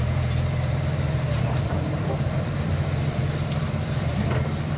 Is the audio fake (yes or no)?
yes